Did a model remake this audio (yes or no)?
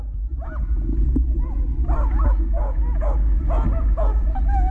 no